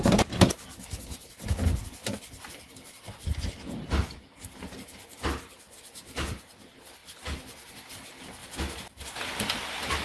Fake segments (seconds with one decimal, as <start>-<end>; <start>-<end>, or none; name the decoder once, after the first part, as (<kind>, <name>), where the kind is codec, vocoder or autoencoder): 2.0-2.7 (vocoder, BigVGAN v2); 8.4-10.0